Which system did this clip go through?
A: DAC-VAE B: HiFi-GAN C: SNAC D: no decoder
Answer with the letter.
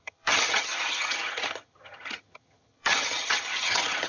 B